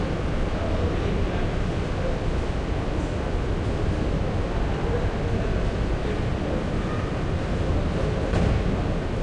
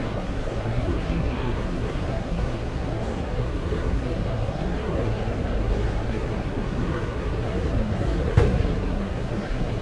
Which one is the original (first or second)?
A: first